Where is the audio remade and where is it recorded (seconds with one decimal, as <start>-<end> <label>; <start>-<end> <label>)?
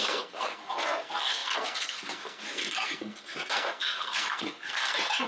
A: 0.0-5.3 remade